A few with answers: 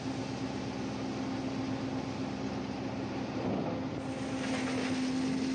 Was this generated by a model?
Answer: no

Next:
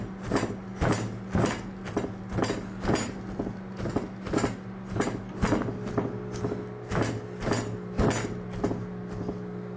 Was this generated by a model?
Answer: no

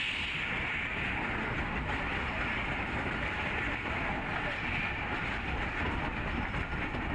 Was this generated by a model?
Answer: no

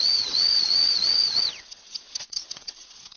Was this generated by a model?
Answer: yes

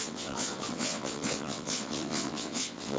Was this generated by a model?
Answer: yes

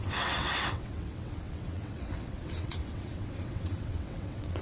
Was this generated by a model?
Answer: yes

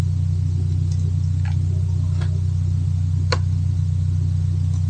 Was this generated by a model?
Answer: no